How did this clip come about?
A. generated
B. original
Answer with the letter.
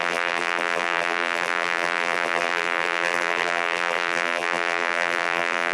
A